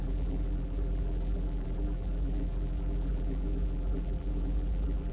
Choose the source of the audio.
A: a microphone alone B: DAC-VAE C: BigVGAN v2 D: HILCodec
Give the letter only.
C